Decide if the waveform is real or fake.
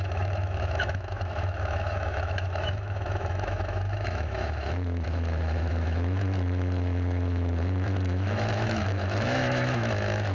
fake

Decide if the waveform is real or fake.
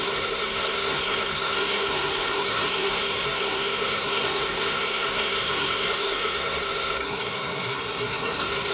fake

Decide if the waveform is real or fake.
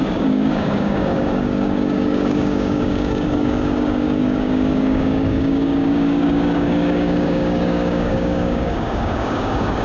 fake